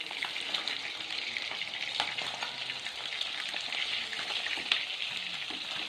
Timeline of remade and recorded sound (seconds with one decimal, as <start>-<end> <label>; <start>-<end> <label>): 0.0-5.9 recorded